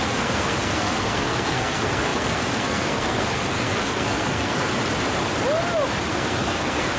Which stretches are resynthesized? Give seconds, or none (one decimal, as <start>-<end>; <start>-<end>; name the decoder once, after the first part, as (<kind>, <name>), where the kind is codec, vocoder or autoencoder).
0.0-4.7 (codec, SNAC); 6.1-7.0